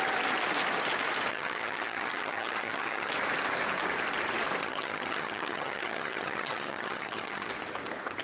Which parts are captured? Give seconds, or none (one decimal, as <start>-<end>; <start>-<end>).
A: 0.0-1.3; 3.1-4.6; 7.5-8.2